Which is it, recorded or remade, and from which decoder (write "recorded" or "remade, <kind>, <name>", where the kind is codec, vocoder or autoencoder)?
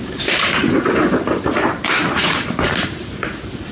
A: recorded